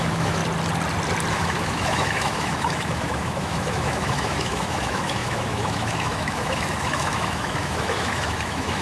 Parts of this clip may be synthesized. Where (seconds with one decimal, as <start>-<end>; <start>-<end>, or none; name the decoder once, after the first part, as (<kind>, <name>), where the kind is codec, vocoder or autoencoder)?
0.0-0.4 (autoencoder, DAC-VAE); 1.3-8.8